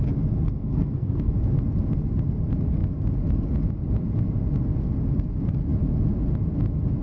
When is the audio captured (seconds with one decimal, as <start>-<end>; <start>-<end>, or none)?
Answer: 0.0-0.6; 1.3-7.0